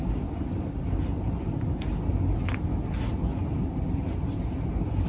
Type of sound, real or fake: real